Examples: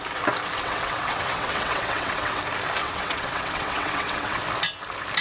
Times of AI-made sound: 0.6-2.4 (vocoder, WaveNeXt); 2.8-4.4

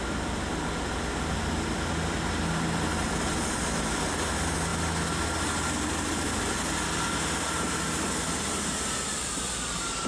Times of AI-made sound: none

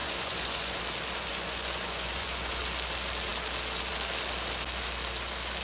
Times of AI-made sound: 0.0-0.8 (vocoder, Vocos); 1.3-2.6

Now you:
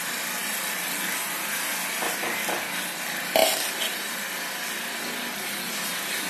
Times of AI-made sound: 0.4-1.1 (vocoder, BigVGAN v2); 3.4-5.7

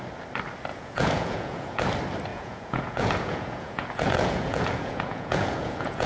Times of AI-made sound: 0.7-1.8 (vocoder, Vocos); 2.3-6.1

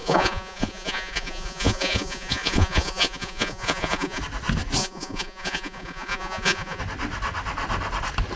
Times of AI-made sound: 0.0-4.2 (vocoder, Vocos); 4.8-6.8